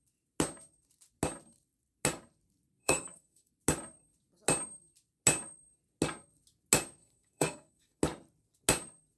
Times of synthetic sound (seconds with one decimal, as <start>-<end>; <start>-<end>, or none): 2.8-3.5; 7.0-8.0